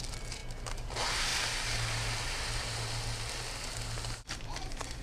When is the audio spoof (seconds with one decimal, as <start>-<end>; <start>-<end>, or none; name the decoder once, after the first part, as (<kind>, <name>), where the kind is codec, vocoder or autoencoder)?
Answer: 0.0-0.4 (vocoder, BigVGAN v2); 0.9-1.3; 4.3-5.0